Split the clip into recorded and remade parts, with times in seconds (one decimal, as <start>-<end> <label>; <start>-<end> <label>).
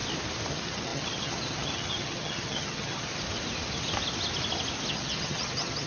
0.0-0.5 recorded; 0.5-3.1 remade; 3.1-4.9 recorded; 4.9-5.9 remade